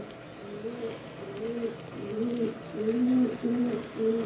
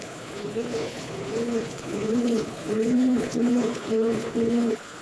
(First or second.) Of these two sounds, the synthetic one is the second